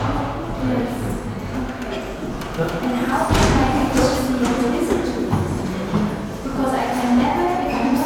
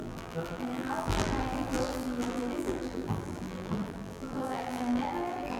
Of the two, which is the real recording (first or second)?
first